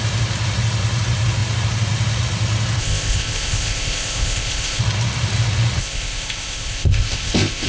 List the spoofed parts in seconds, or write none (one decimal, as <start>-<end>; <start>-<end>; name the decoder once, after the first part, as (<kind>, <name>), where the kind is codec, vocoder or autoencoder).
2.8-4.8 (codec, ZipCodec); 5.8-7.7